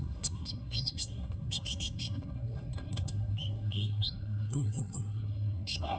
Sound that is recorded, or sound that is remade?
remade